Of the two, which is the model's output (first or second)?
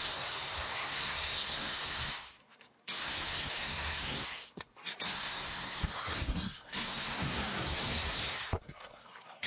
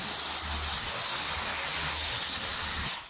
first